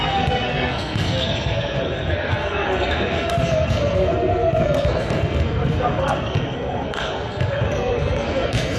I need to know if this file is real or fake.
fake